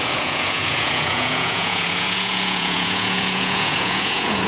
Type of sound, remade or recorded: remade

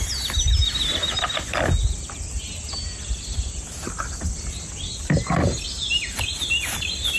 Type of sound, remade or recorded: recorded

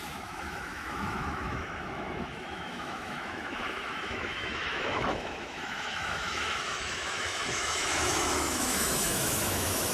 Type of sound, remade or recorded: remade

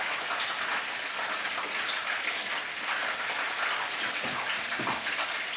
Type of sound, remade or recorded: recorded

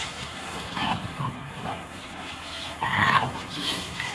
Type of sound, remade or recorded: remade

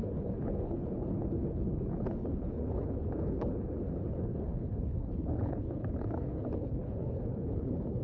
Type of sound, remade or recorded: remade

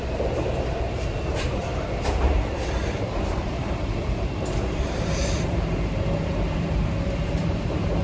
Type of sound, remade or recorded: remade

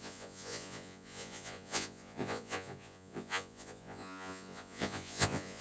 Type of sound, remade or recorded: remade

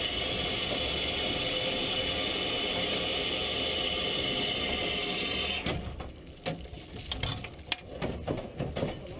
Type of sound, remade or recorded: recorded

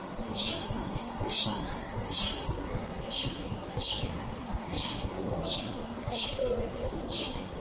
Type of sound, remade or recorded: remade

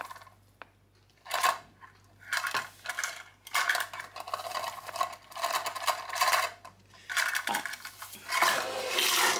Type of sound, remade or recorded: recorded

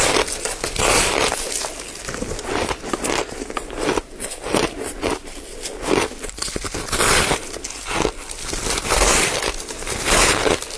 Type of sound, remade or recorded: recorded